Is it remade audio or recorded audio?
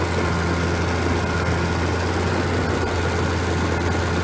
recorded